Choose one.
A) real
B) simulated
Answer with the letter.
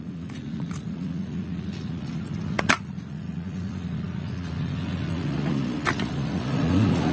B